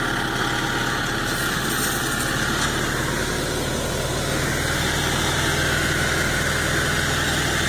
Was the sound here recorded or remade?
recorded